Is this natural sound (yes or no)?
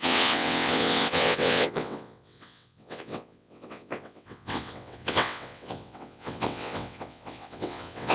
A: no